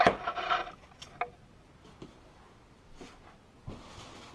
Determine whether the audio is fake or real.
real